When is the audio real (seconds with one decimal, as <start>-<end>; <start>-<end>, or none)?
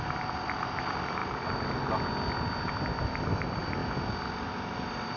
1.2-3.2; 3.8-4.6